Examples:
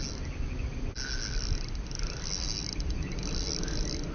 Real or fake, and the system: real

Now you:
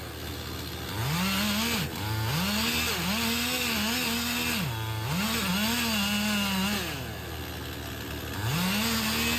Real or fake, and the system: real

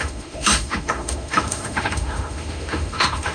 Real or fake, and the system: fake, autoencoder, DAC-VAE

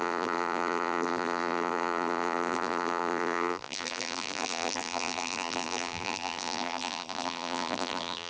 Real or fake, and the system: fake, vocoder, BigVGAN v2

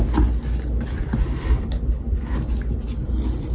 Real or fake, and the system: real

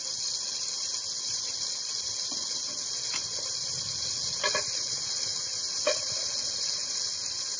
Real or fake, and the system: real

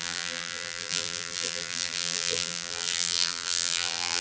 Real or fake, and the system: fake, vocoder, BigVGAN v2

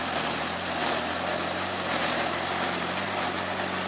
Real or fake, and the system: real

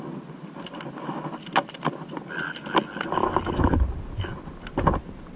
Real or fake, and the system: real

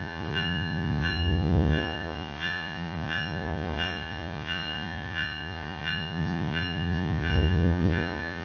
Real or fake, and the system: fake, vocoder, Vocos